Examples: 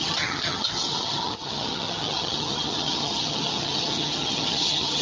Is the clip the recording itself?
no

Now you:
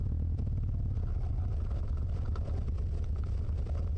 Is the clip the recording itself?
yes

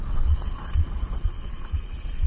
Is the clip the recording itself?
no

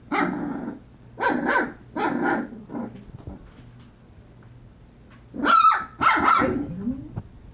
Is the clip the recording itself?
yes